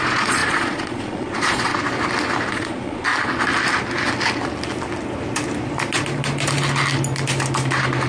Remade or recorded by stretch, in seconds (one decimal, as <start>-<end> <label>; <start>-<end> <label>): 0.0-1.7 remade; 1.7-2.5 recorded; 2.5-3.1 remade; 3.1-8.1 recorded